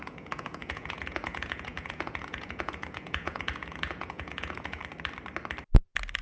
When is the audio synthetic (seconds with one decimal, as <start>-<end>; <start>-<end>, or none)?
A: 0.0-4.8